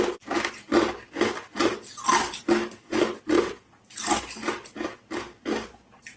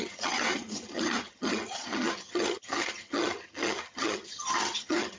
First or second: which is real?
first